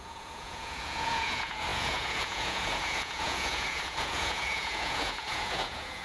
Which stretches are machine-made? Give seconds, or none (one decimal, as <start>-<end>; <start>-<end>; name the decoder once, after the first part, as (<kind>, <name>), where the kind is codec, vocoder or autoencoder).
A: 0.0-6.0 (vocoder, Vocos)